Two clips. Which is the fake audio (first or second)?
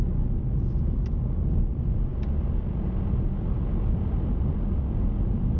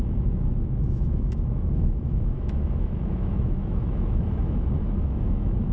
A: second